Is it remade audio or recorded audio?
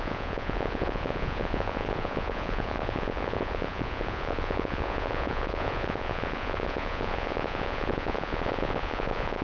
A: remade